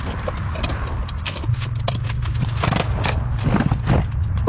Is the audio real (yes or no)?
yes